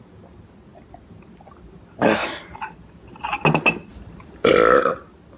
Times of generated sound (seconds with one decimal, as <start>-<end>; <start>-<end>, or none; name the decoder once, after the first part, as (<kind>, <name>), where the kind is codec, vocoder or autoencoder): none